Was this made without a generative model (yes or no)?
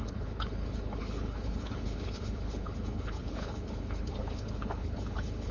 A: no